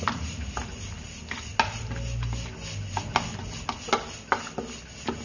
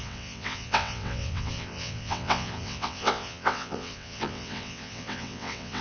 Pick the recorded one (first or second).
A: first